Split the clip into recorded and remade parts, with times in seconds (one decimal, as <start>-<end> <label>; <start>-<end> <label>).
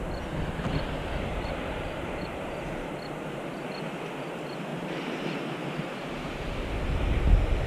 0.0-1.3 recorded; 1.3-2.9 remade; 2.9-4.7 recorded; 4.7-6.4 remade; 6.4-7.7 recorded